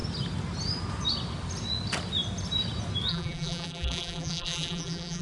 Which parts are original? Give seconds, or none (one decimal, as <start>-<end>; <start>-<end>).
0.0-3.1